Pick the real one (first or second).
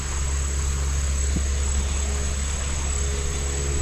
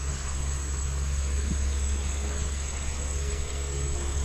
first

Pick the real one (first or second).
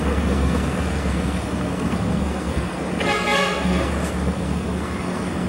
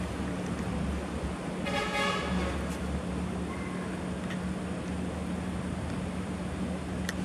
second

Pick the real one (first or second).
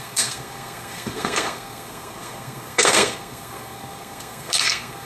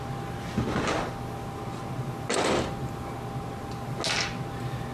second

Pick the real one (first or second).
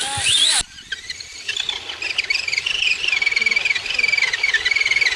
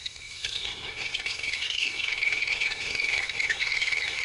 first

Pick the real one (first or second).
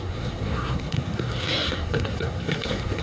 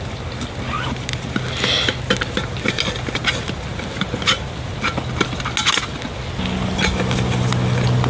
second